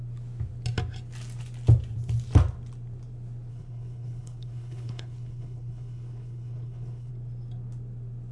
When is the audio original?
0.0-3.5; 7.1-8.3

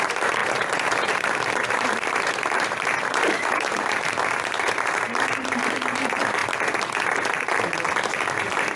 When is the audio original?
6.4-8.4

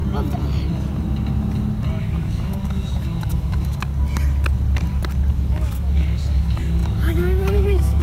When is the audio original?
0.0-2.0; 3.9-5.3

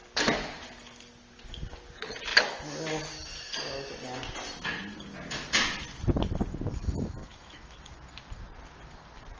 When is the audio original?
0.0-7.2; 7.8-9.4